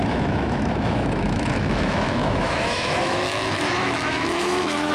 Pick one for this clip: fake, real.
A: fake